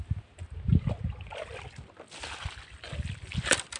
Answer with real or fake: real